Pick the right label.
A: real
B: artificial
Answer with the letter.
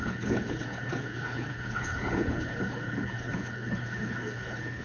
B